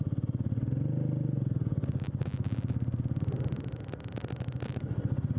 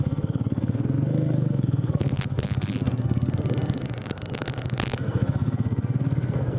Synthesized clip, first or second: second